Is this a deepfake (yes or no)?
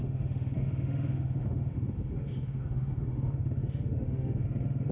yes